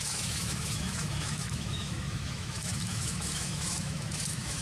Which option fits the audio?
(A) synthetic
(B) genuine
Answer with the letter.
A